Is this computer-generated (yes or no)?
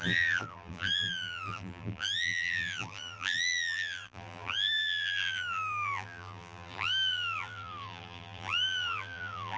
yes